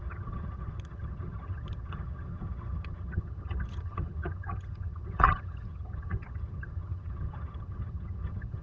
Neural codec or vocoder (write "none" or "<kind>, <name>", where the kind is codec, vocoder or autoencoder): vocoder, HiFi-GAN